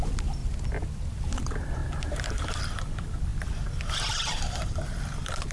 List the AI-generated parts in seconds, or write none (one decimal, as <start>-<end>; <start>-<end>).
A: none